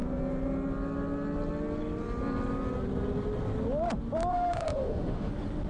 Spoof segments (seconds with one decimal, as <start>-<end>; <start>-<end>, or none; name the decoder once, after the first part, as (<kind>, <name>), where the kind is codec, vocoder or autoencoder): 4.3-5.3 (autoencoder, DAC-VAE)